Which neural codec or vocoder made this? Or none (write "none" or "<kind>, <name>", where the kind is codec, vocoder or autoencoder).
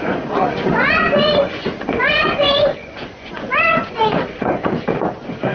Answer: vocoder, Vocos